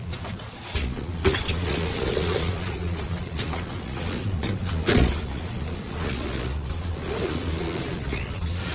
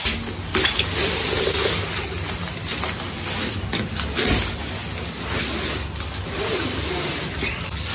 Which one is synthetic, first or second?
first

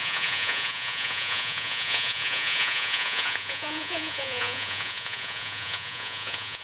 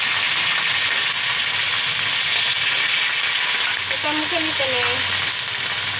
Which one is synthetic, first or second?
first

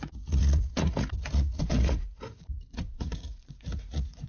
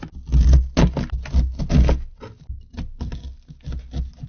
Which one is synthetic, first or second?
first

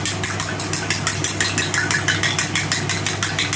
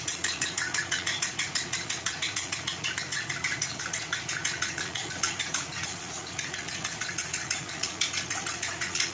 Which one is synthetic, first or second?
second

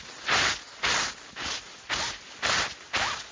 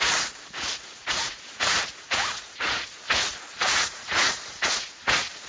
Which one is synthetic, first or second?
second